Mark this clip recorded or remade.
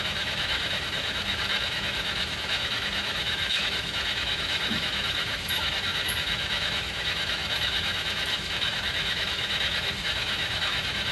remade